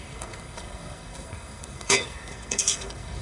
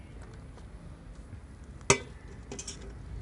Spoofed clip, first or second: first